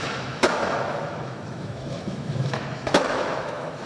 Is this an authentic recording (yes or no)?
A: no